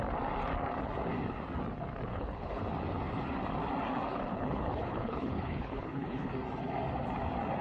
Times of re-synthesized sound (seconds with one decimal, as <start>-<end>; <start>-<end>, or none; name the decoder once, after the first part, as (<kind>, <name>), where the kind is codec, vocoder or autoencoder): 2.1-2.6 (codec, HILCodec); 4.3-6.3